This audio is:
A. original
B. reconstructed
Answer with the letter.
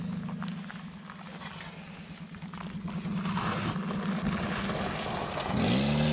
A